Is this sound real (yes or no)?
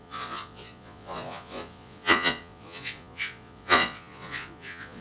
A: no